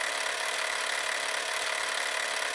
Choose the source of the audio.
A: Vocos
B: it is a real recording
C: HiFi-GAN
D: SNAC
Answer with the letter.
B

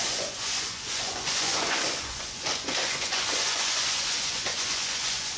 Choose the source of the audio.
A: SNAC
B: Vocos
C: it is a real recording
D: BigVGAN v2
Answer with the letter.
B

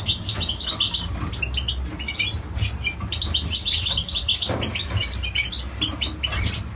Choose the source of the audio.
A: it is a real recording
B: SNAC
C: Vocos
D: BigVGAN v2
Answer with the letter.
A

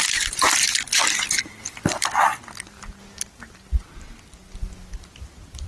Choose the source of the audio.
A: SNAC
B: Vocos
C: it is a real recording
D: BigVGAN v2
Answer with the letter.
C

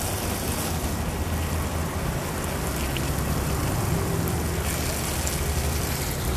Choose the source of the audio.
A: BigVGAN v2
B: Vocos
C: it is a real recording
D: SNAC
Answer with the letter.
C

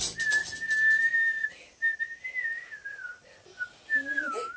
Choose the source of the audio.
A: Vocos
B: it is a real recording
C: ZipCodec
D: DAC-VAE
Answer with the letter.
B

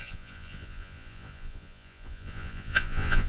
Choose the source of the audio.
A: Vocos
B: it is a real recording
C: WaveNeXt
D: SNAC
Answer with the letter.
A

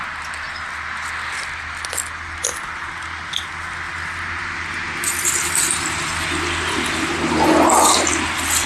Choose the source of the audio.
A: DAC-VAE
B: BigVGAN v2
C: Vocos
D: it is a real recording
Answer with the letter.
D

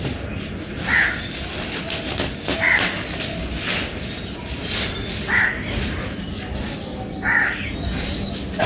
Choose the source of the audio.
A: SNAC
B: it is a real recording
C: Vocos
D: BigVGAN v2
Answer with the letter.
B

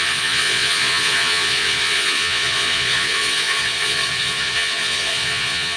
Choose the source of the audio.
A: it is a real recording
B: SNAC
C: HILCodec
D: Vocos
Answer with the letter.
D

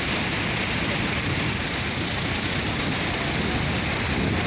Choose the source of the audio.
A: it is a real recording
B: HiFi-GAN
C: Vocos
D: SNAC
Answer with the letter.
A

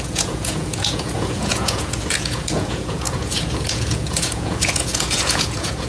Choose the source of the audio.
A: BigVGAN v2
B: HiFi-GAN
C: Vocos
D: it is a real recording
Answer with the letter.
C